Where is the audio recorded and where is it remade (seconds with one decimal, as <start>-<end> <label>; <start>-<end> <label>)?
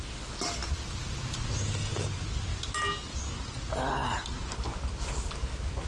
0.0-5.9 recorded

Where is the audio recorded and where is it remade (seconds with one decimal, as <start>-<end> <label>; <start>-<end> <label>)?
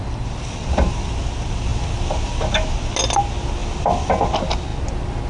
0.0-5.3 recorded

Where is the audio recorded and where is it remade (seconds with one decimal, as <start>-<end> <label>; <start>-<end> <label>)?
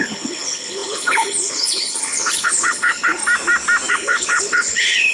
0.0-3.2 remade; 3.2-3.9 recorded; 3.9-5.1 remade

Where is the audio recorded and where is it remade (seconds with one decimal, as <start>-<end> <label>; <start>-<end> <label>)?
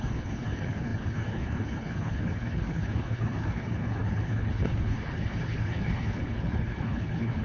0.0-7.4 remade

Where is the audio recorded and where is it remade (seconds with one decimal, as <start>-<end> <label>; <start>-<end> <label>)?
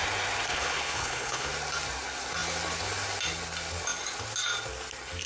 0.0-0.5 recorded; 0.5-1.5 remade; 1.5-5.3 recorded